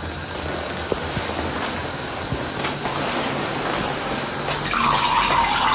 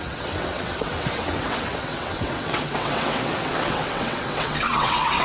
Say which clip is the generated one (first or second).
second